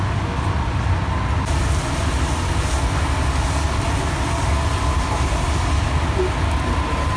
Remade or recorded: recorded